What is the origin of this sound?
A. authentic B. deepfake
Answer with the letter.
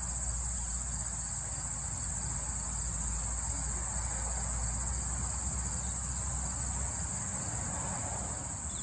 A